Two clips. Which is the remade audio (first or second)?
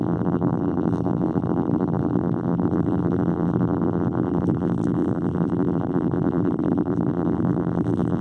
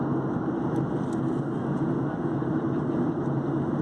first